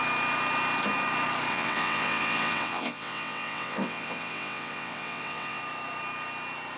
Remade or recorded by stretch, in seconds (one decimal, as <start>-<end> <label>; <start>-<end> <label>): 0.0-1.5 recorded; 1.5-5.6 remade; 5.6-6.8 recorded